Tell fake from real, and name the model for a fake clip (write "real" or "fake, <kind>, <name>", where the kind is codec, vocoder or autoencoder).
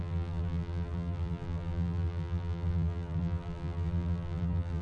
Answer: fake, vocoder, BigVGAN v2